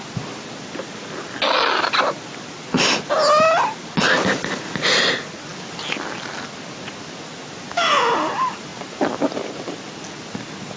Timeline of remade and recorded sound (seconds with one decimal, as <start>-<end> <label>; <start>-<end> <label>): 0.0-10.8 recorded